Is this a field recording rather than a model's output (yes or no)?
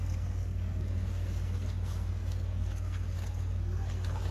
no